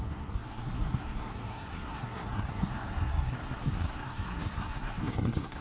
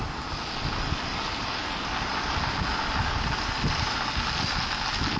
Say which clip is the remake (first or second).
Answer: first